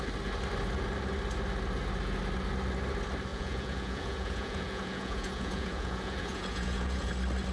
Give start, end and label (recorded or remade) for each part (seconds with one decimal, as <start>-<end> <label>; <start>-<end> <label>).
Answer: 0.0-3.3 recorded; 3.3-7.1 remade; 7.1-7.5 recorded